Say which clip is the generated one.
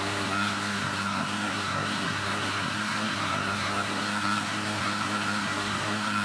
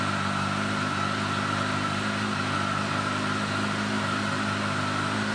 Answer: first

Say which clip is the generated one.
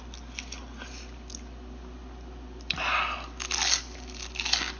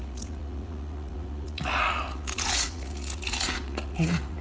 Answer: second